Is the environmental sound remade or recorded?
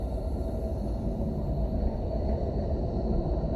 recorded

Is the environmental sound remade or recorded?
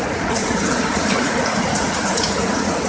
remade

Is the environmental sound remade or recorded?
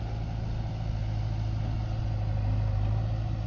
recorded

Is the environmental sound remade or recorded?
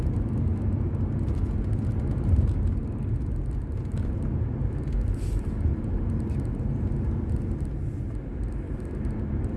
recorded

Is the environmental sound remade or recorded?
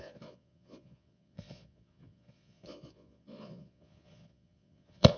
remade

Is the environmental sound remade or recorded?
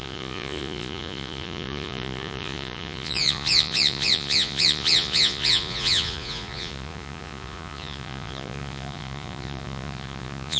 remade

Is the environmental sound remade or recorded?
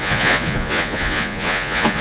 remade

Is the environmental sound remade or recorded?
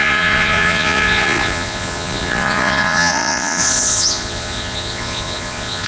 remade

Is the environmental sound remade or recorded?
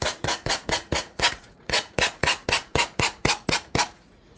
remade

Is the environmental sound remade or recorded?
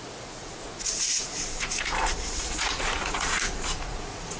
remade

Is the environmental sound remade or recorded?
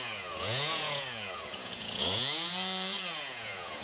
remade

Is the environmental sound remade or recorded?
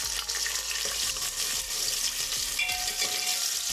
recorded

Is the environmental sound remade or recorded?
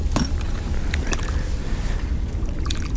recorded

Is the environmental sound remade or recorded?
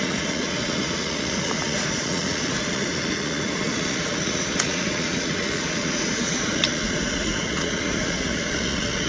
remade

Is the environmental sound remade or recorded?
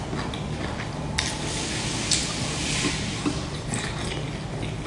recorded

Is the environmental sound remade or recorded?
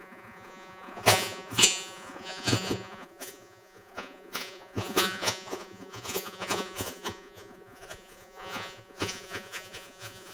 remade